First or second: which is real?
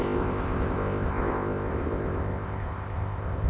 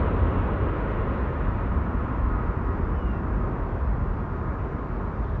second